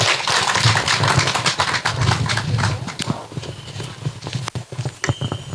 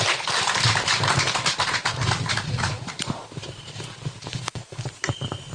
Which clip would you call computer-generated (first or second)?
second